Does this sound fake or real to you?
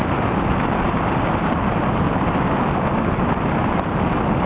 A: real